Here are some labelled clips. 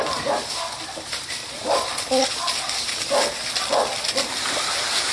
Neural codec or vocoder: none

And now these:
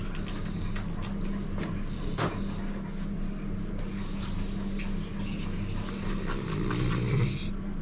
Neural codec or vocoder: none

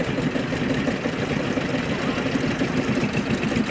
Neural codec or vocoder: none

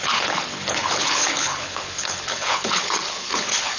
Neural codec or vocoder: codec, HILCodec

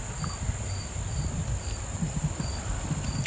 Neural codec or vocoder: none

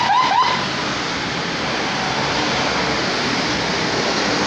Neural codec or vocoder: none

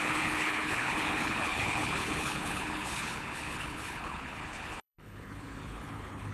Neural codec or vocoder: codec, HILCodec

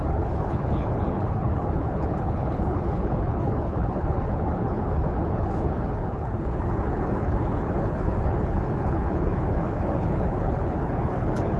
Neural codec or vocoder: codec, HILCodec